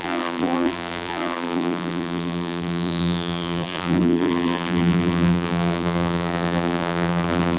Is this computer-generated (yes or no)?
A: yes